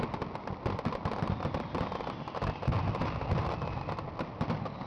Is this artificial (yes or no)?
no